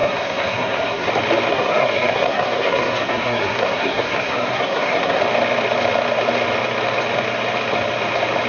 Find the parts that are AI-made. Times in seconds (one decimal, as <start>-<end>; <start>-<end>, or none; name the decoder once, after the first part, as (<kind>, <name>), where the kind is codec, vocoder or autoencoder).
0.0-1.1 (codec, SNAC); 1.5-5.2